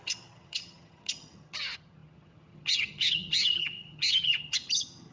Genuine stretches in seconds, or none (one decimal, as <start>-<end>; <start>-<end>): none